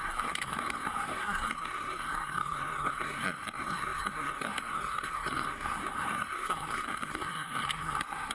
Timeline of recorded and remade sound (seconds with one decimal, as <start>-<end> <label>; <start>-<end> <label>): 0.0-8.3 remade